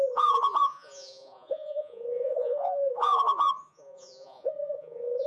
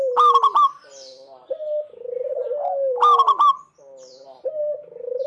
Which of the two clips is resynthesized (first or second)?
first